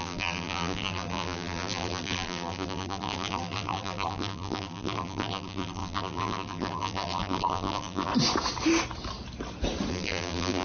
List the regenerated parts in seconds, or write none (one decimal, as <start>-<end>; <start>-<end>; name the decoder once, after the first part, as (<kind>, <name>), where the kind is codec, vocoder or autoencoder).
0.0-8.1 (vocoder, BigVGAN v2); 9.9-10.6